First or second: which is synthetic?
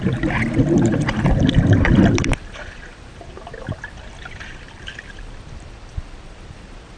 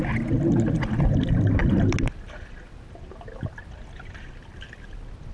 first